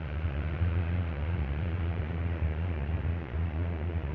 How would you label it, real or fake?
fake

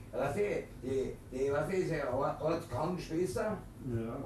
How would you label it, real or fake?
real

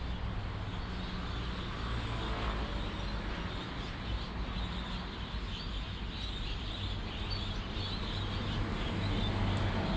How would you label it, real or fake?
real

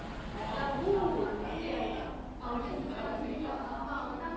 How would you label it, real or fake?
real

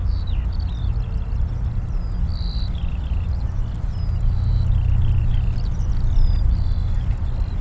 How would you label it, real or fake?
real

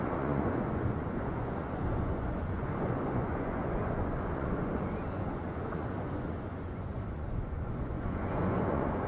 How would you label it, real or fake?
fake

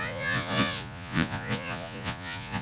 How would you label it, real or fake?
fake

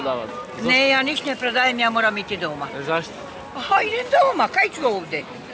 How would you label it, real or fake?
real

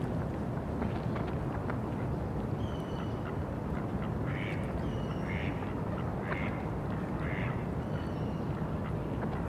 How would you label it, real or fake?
real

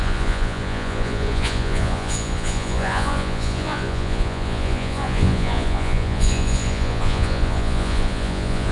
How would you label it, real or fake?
fake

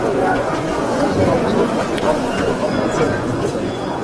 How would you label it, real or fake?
fake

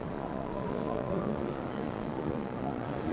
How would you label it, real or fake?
fake